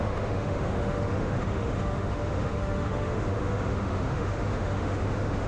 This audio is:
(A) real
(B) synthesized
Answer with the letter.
B